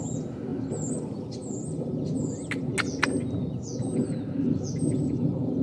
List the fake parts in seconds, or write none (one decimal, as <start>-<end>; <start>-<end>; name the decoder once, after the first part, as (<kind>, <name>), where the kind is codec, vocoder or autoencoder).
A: none

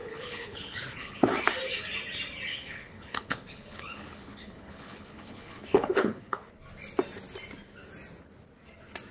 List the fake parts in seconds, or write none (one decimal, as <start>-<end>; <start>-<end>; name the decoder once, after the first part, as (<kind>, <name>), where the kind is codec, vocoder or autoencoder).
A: 0.0-1.3 (codec, HILCodec); 2.5-6.5

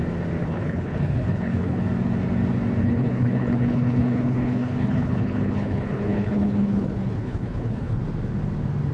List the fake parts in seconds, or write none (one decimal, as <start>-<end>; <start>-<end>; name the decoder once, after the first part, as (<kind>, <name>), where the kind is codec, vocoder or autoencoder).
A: 0.4-1.8 (codec, HILCodec); 2.8-8.0

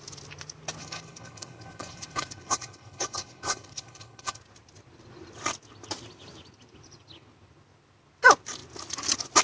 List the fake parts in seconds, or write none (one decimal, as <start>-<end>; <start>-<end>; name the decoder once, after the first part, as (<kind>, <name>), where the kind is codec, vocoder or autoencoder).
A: 0.8-4.4 (codec, HILCodec)

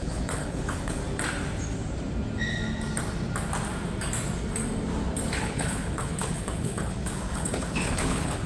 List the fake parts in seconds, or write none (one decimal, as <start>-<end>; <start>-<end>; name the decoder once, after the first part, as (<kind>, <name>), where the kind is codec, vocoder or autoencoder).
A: 0.0-1.0 (codec, HILCodec); 5.4-8.5

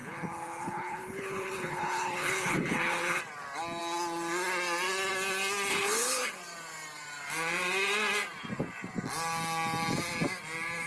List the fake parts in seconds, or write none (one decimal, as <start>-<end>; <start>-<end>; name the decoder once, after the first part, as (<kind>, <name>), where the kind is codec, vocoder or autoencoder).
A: 0.0-3.2 (codec, HILCodec); 5.7-6.4

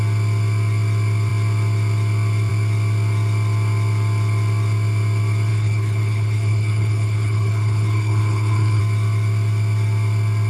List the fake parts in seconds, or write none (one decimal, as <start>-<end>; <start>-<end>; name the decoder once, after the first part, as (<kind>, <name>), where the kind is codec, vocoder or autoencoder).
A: 5.5-8.8 (codec, HILCodec)

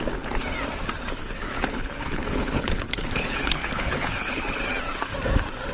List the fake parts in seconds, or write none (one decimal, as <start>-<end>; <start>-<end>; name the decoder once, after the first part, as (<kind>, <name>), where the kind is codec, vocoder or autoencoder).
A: 1.2-4.6 (codec, HILCodec)